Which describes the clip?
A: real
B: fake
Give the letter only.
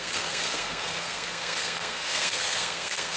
B